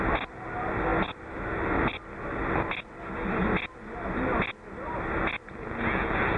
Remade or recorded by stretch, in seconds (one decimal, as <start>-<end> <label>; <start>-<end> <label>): 0.0-6.4 recorded